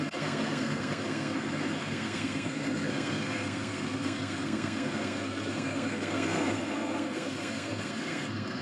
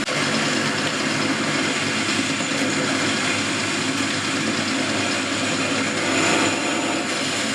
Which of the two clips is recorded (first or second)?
second